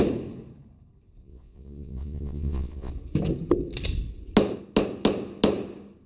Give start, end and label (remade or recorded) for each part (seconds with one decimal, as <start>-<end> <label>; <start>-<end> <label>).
0.0-1.2 recorded; 1.2-2.9 remade; 2.9-6.1 recorded